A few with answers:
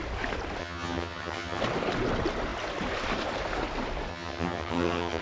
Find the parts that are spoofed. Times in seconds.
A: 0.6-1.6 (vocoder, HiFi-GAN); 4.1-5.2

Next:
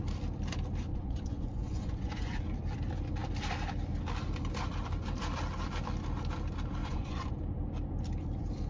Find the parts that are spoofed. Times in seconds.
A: 0.9-2.4 (vocoder, Vocos); 6.8-7.3

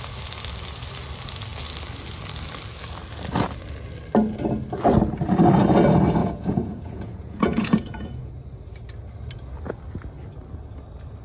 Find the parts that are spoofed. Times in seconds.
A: 6.2-8.3 (vocoder, Vocos)

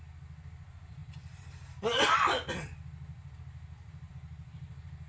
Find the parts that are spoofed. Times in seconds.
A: none